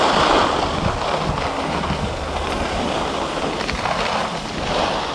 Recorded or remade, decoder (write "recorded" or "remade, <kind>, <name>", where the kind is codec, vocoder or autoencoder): recorded